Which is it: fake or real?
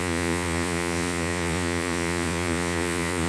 fake